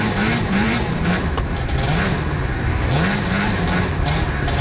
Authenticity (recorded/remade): remade